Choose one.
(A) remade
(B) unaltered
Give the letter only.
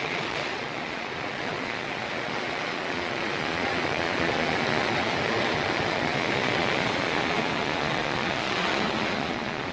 A